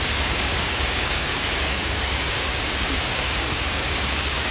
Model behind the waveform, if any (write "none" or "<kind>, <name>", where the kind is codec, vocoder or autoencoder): codec, DAC